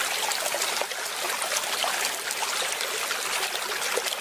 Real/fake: real